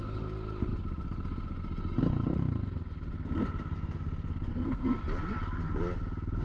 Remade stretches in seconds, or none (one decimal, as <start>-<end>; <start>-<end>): 4.5-5.0